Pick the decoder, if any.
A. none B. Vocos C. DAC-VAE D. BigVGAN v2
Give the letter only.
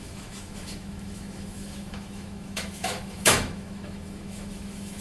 C